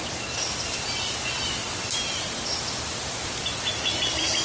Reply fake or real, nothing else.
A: real